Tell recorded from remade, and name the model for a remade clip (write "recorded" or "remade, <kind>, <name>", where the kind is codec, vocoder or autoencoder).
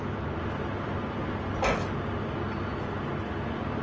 recorded